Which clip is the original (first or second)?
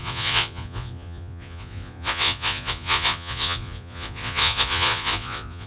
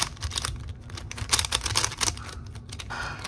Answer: second